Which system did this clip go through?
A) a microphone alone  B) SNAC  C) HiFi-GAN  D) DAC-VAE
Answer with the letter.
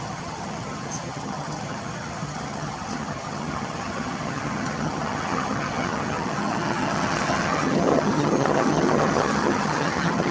C